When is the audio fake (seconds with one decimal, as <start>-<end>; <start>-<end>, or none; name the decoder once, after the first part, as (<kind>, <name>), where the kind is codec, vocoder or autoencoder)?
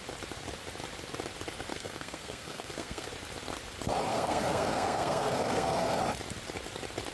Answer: 1.7-3.1 (codec, SNAC); 4.1-6.0